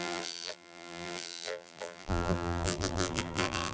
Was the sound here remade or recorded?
remade